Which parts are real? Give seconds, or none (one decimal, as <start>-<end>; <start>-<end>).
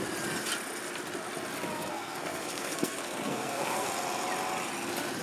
0.0-1.7; 3.9-5.2